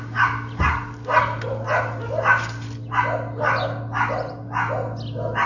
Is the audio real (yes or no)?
yes